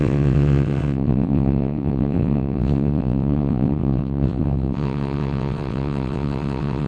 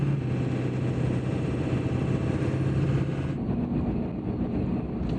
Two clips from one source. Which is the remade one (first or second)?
first